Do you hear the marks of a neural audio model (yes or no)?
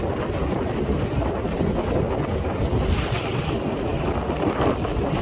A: no